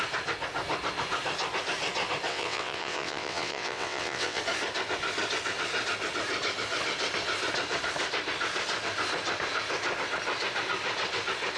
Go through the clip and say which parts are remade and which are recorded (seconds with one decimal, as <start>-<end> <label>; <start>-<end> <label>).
0.0-2.3 recorded; 2.3-4.4 remade; 4.4-11.6 recorded